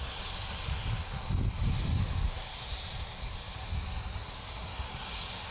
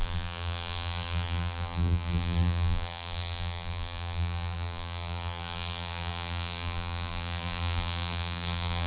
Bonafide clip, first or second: first